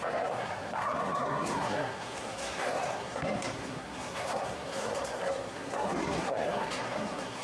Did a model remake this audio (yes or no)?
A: yes